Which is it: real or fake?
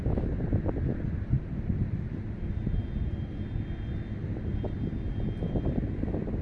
real